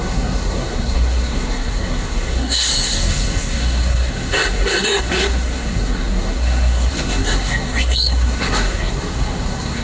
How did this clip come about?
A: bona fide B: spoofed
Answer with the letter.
B